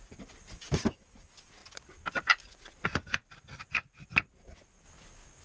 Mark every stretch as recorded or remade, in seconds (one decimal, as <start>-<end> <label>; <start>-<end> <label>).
0.0-5.4 recorded